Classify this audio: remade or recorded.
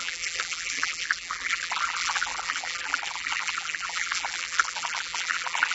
remade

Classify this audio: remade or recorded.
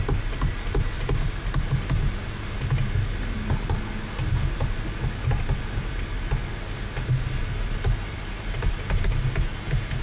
recorded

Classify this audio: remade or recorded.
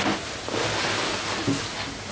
recorded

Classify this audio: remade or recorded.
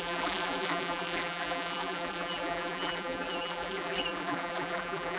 remade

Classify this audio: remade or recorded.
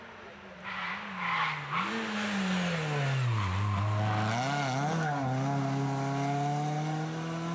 recorded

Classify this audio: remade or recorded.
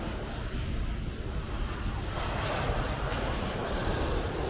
recorded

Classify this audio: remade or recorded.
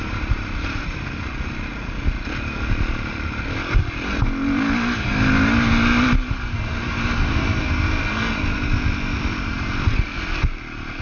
recorded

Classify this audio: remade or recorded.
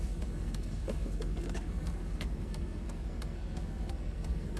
remade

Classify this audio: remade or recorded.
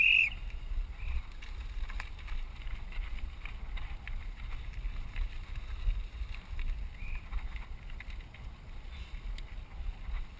recorded